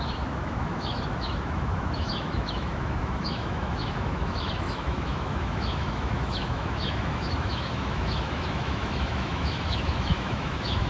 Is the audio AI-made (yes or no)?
yes